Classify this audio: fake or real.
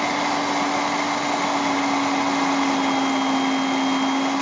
real